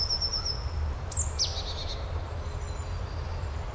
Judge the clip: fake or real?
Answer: real